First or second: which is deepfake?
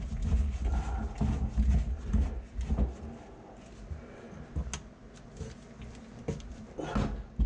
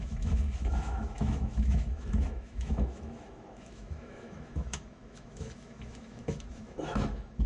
second